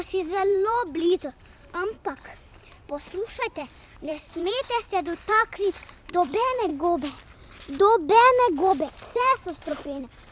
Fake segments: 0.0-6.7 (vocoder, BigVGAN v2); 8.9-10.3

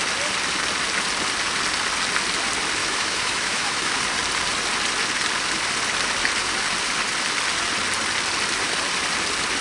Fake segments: 2.8-4.0 (autoencoder, DAC-VAE)

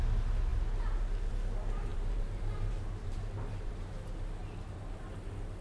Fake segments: 1.9-3.7 (vocoder, BigVGAN v2)

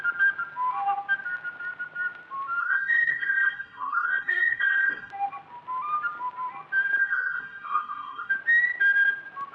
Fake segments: 2.6-5.1 (codec, SNAC); 7.0-8.3

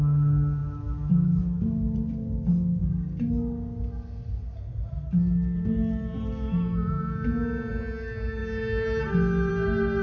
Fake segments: none

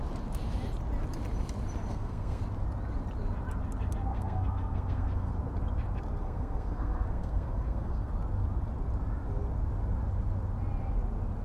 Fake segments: 1.9-2.4 (codec, SNAC); 4.1-5.3; 6.2-8.1

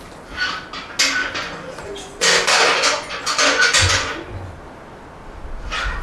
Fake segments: 1.2-4.5 (vocoder, Vocos)

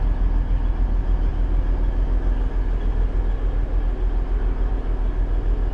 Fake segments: none